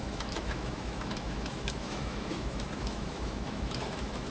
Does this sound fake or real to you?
fake